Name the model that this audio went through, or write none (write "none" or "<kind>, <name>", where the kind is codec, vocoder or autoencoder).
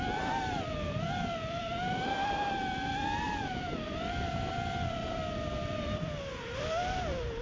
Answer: vocoder, BigVGAN v2